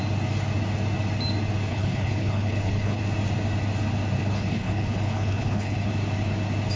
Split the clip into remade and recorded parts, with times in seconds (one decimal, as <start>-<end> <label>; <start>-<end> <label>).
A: 0.0-1.7 recorded; 1.7-3.0 remade; 3.0-4.2 recorded; 4.2-5.9 remade; 5.9-6.8 recorded